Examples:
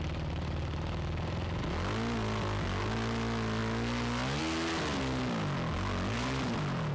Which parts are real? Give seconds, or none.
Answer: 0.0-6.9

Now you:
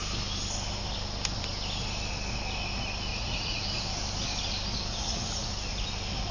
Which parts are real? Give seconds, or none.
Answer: 0.0-3.1; 3.6-4.9; 5.5-6.3

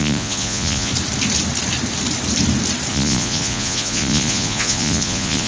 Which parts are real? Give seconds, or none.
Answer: 0.9-2.9

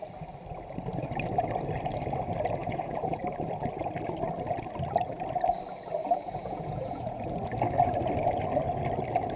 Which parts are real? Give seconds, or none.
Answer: 0.0-2.6; 3.2-6.0; 7.3-9.4

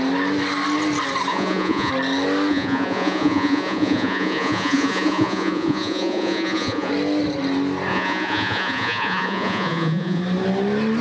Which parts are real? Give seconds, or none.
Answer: 0.0-1.3; 1.9-2.5; 6.9-7.9; 10.2-11.0